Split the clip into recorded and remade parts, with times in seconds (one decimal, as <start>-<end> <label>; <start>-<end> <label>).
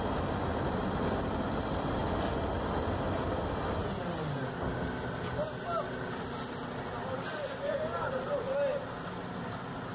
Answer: 0.0-2.0 recorded; 2.0-3.0 remade; 3.0-7.3 recorded; 7.3-8.3 remade; 8.3-9.9 recorded